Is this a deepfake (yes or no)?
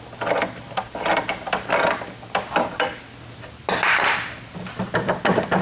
no